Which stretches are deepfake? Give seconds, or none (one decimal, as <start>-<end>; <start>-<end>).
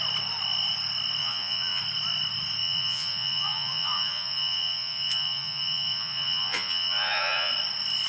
1.2-1.8; 2.6-7.5